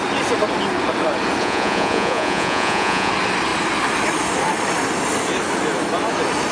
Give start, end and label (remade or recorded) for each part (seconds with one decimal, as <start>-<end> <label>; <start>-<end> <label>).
0.0-1.4 recorded; 1.4-3.1 remade; 3.1-6.5 recorded